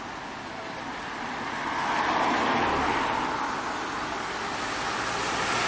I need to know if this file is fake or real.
real